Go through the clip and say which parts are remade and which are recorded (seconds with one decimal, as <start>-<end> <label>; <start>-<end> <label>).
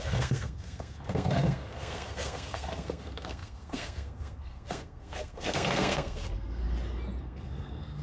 0.0-6.6 remade; 6.6-7.2 recorded; 7.2-8.0 remade